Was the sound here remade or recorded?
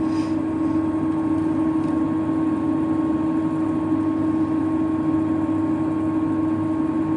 recorded